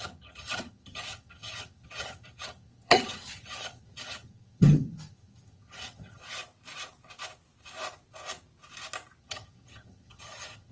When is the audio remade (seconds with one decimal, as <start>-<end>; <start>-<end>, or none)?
0.0-6.2; 9.2-10.7